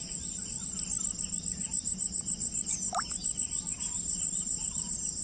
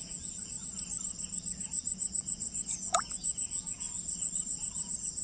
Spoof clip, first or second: second